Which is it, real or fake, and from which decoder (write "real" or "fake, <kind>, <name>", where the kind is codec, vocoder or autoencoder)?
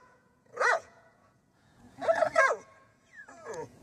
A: fake, vocoder, Vocos